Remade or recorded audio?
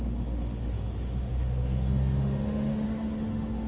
remade